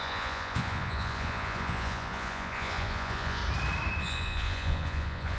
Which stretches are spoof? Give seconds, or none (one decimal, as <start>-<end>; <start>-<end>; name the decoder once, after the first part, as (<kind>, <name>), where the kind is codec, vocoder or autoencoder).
0.0-3.4 (vocoder, Vocos); 4.0-5.4